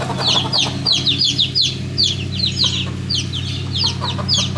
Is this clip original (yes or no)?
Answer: yes